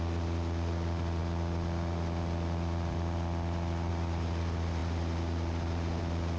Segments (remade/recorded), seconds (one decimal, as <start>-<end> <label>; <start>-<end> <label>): 0.0-6.4 recorded